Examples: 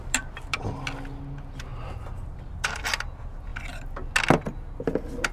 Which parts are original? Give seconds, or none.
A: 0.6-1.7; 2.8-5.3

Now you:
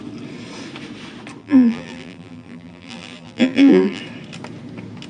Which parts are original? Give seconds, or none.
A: 0.0-1.4; 4.0-5.1

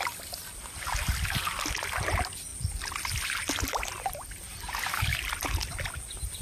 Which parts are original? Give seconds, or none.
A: 0.0-6.4

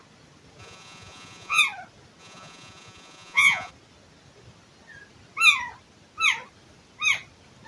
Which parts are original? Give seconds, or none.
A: 0.0-0.6; 1.6-2.2; 3.7-7.7

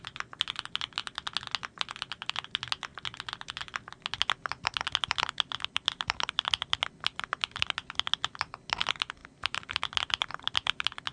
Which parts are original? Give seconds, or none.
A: 0.0-9.2; 9.8-11.1